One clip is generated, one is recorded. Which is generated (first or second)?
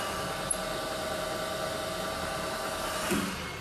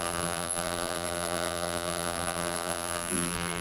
second